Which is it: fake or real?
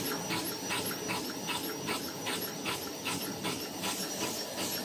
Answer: real